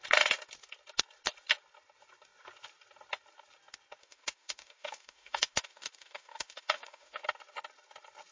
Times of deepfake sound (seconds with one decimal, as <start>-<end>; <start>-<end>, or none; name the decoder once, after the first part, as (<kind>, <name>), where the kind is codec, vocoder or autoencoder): 4.0-7.2 (autoencoder, DAC-VAE)